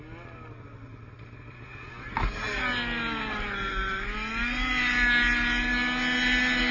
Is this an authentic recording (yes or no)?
yes